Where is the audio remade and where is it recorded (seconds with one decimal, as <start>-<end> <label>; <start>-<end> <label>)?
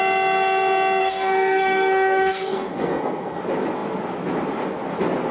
0.0-1.0 recorded; 1.0-3.4 remade; 3.4-5.3 recorded